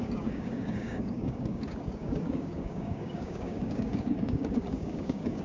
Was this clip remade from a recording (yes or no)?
yes